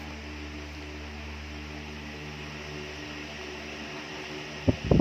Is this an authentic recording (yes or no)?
yes